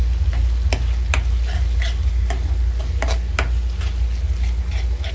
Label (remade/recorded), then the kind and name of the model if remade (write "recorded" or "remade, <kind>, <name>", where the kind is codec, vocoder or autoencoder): recorded